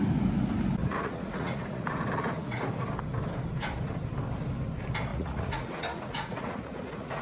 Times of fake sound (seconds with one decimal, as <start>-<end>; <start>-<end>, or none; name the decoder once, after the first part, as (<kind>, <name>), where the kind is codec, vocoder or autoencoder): 0.8-2.6 (vocoder, Vocos); 5.1-7.2